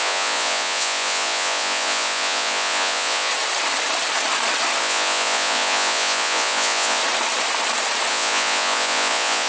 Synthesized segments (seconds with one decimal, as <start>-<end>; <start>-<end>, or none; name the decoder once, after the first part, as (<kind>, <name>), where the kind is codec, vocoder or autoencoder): 0.0-3.3 (vocoder, Vocos); 4.8-7.0; 8.1-9.5